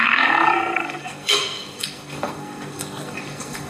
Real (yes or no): no